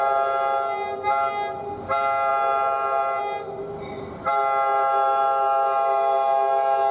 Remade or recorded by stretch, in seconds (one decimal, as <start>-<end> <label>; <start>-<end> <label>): 0.0-6.9 recorded

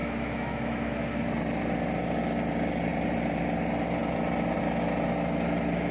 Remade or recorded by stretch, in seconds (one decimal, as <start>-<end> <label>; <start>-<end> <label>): 0.0-1.2 remade; 1.2-5.9 recorded

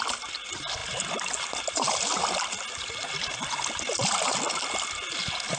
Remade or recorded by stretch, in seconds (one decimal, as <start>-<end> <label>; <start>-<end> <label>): 0.0-5.6 recorded

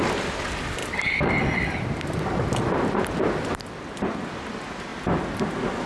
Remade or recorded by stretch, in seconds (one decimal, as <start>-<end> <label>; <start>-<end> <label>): 0.0-5.9 recorded

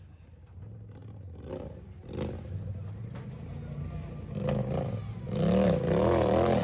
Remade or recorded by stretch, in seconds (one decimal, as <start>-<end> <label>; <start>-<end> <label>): 0.0-6.6 recorded